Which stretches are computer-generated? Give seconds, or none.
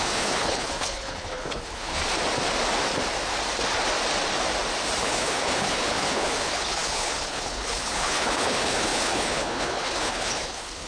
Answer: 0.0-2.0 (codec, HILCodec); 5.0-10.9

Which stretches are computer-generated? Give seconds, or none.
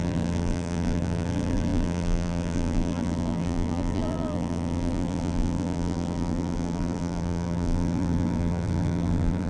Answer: 0.0-9.5 (vocoder, BigVGAN v2)